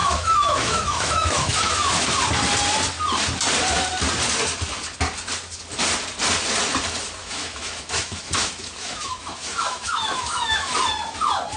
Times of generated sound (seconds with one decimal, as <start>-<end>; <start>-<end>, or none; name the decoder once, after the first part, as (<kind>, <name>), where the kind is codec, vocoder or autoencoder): 0.0-2.1 (autoencoder, DAC-VAE); 7.2-10.7